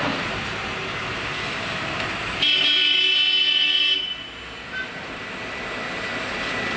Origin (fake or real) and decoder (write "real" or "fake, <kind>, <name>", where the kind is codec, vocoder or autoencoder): real